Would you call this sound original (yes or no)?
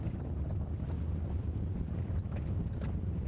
yes